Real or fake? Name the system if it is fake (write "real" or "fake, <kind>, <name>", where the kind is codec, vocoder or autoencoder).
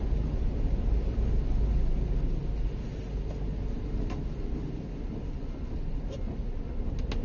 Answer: real